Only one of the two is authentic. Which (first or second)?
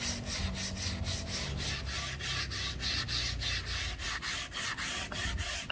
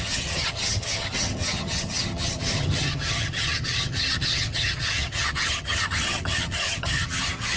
first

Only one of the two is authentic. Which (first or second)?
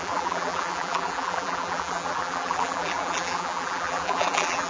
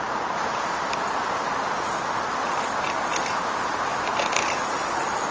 second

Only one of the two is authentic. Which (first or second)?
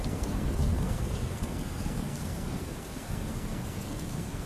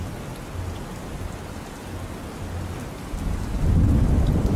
second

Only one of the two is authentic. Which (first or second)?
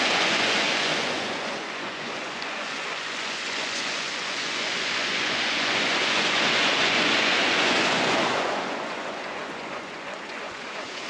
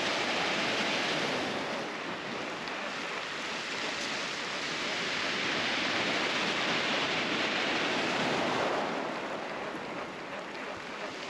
second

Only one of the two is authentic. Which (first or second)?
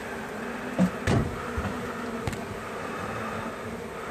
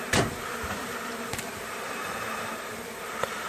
first